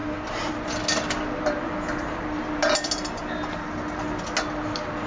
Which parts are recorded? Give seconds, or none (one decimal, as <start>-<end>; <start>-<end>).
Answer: 0.0-5.1